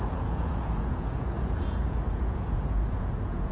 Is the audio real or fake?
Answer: fake